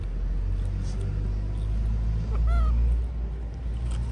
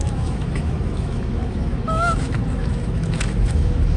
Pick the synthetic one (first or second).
second